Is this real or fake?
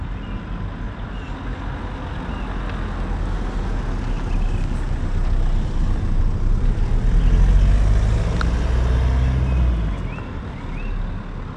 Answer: real